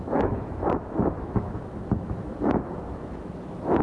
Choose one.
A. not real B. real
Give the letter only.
A